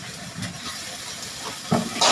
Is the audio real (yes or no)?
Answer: yes